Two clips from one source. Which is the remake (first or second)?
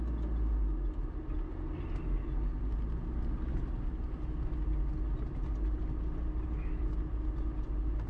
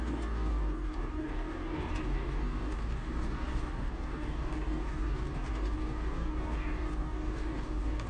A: second